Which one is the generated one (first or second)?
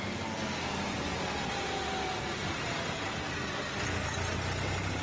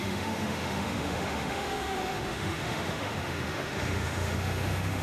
second